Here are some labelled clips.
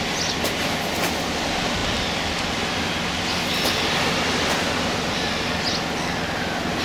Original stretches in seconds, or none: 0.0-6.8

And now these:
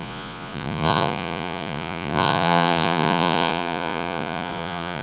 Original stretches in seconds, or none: none

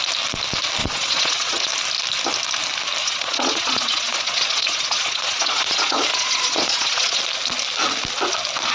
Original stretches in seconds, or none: 0.0-0.8; 1.7-3.0; 7.2-8.7

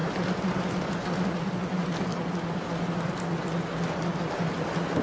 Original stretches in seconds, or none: 0.0-5.0

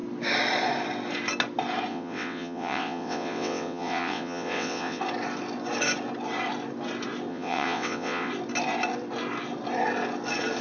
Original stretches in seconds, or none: 0.0-1.9; 5.0-7.3; 8.3-10.6

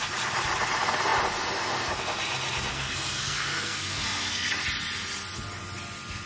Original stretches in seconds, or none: 0.0-2.7; 4.5-6.3

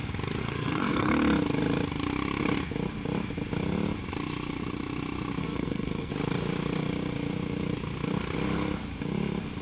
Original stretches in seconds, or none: 0.0-0.4; 1.1-5.4; 6.1-9.6